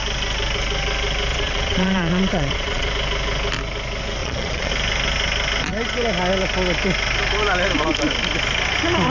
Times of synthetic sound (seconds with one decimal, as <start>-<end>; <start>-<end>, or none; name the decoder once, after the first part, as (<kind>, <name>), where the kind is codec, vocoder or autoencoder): 1.3-2.9 (vocoder, Vocos); 4.2-4.7